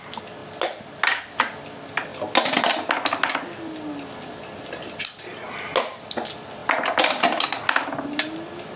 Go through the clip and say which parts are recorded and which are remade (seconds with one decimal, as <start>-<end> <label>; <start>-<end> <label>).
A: 0.0-8.8 recorded